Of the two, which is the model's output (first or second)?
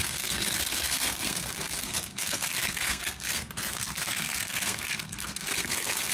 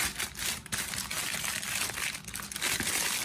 first